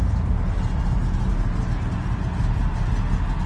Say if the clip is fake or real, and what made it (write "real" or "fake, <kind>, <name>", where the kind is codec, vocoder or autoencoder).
real